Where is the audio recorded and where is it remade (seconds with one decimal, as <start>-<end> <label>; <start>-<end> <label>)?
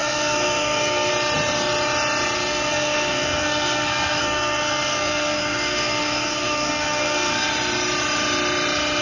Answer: 0.0-1.1 remade; 1.1-2.5 recorded; 2.5-7.5 remade; 7.5-9.0 recorded